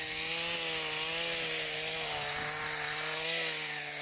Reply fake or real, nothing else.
real